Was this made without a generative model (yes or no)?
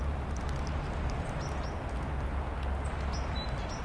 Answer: yes